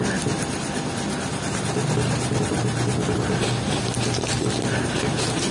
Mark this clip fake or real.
real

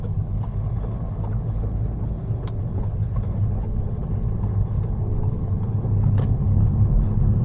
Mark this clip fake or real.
fake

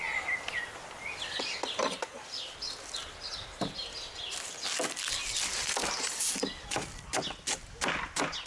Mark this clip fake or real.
real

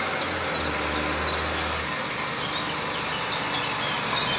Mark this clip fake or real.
real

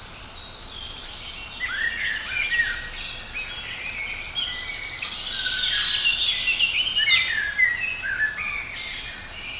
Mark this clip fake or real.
real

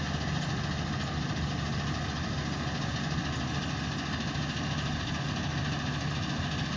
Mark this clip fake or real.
real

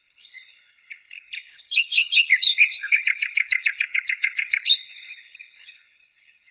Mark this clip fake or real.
fake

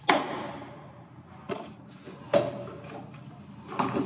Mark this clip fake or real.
real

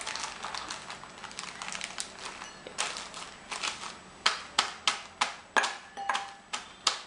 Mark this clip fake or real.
real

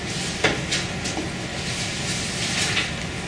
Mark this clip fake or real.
real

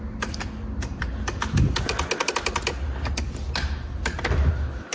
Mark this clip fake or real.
real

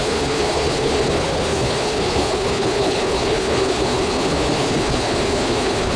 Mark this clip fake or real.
fake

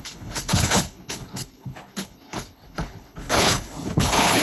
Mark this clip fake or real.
fake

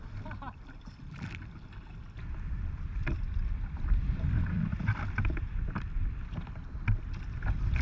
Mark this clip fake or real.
real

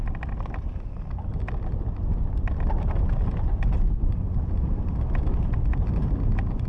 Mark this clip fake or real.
real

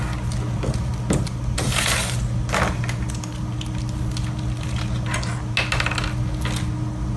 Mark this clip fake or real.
real